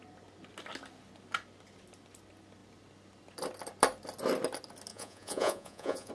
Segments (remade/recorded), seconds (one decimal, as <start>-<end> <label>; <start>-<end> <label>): 0.0-4.9 recorded; 4.9-6.1 remade